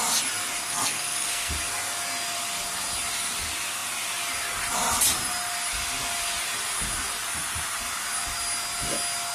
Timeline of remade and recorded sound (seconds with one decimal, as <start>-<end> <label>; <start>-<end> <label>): 0.0-0.6 recorded; 0.6-1.5 remade; 1.5-9.3 recorded